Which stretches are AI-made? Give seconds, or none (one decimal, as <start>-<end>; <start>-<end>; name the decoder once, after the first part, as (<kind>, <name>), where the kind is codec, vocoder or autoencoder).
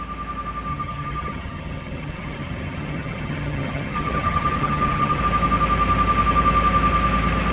0.7-5.2 (vocoder, HiFi-GAN)